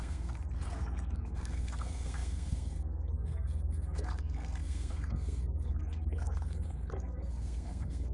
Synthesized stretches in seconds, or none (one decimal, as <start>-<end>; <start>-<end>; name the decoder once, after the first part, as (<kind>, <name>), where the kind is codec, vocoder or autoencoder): 0.0-8.1 (codec, SNAC)